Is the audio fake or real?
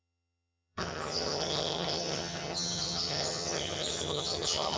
fake